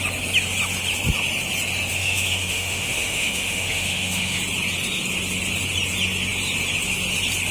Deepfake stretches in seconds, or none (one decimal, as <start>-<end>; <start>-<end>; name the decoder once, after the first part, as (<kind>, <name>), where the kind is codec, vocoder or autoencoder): 1.9-4.4 (autoencoder, DAC-VAE)